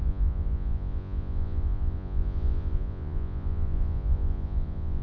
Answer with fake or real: fake